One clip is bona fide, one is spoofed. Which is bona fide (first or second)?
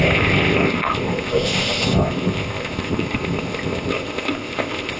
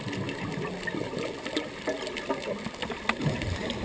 second